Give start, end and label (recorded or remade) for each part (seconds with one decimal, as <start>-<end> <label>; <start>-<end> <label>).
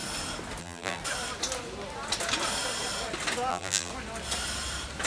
0.0-0.6 recorded; 0.6-1.0 remade; 1.0-3.5 recorded; 3.5-3.9 remade; 3.9-5.1 recorded